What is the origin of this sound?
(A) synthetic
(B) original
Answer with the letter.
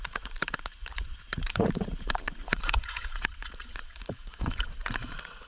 A